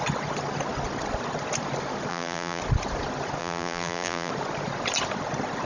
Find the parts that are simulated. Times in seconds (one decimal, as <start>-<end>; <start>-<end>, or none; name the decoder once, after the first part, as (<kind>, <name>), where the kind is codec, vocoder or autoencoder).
2.1-2.6 (vocoder, BigVGAN v2); 3.4-4.3